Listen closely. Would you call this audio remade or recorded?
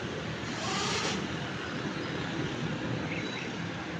recorded